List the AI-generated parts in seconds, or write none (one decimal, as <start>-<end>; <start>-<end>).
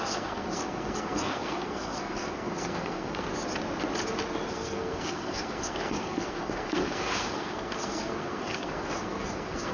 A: 0.0-3.3; 4.5-9.7